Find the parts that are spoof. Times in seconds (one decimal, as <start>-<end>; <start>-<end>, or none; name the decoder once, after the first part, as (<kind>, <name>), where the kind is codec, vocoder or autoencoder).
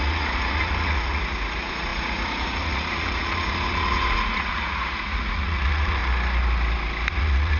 0.0-6.0 (vocoder, Vocos); 7.1-7.6